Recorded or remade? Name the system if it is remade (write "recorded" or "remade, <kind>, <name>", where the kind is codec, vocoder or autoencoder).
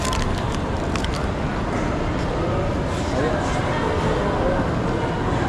recorded